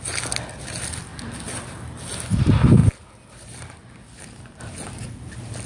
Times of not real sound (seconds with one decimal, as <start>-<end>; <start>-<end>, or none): none